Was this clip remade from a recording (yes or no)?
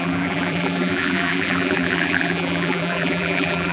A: yes